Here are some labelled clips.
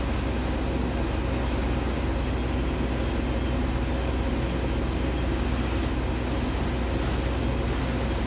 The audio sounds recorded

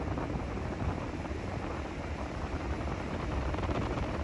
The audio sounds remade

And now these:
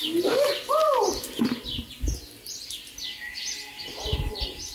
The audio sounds remade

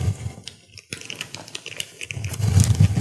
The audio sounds recorded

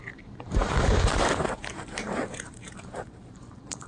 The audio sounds remade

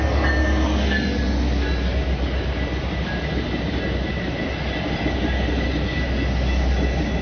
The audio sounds recorded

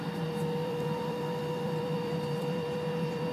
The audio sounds remade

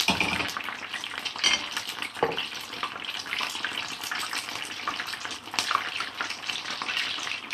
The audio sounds recorded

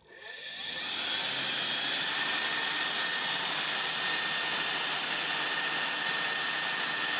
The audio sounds recorded